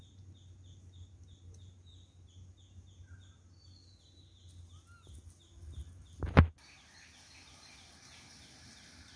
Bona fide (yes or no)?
yes